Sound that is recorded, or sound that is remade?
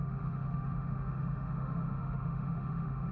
remade